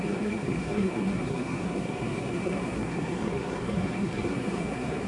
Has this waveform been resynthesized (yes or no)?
yes